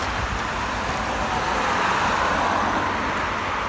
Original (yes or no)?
yes